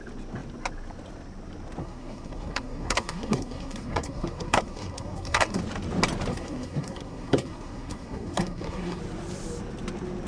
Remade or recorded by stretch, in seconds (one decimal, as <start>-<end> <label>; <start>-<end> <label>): 0.0-1.8 recorded; 1.8-5.6 remade; 5.6-6.3 recorded; 6.3-9.0 remade; 9.0-10.3 recorded